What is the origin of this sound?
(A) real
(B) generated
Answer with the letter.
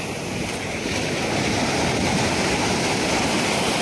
A